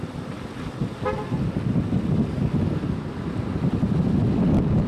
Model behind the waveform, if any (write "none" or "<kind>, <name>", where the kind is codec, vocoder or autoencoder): none